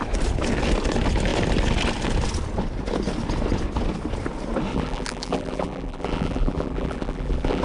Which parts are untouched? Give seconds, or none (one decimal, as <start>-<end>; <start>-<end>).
0.0-4.7